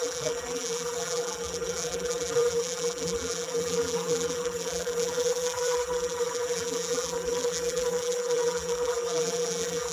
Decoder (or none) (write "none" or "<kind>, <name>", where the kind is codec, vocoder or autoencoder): vocoder, BigVGAN v2